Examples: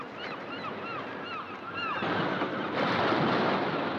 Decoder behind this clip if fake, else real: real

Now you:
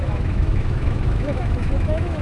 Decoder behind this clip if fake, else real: fake, autoencoder, DAC-VAE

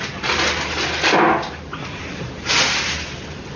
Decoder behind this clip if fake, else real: real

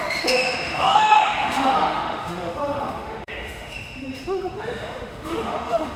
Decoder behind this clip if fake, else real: fake, autoencoder, DAC-VAE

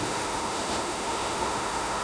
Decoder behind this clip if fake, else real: fake, autoencoder, DAC-VAE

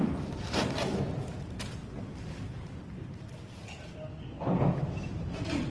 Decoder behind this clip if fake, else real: real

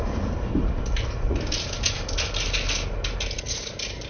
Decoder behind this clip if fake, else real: real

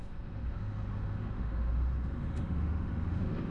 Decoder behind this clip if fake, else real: fake, autoencoder, DAC-VAE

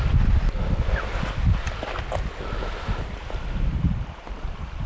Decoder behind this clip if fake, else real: real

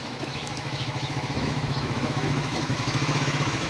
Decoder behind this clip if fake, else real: fake, autoencoder, DAC-VAE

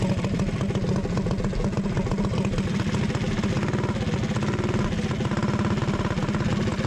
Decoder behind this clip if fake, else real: real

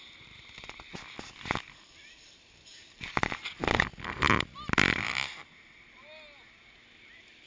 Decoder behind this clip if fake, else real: real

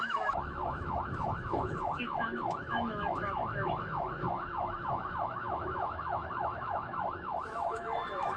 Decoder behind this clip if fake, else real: fake, autoencoder, DAC-VAE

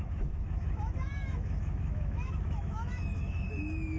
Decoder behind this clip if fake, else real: fake, autoencoder, DAC-VAE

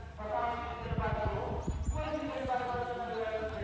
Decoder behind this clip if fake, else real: real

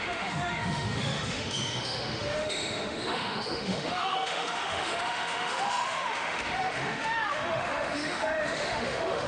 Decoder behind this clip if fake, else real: fake, autoencoder, DAC-VAE